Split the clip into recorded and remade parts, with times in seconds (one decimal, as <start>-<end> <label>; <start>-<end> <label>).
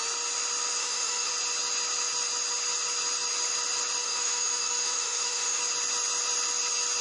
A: 0.0-0.8 recorded; 0.8-1.3 remade; 1.3-4.0 recorded; 4.0-5.6 remade; 5.6-7.0 recorded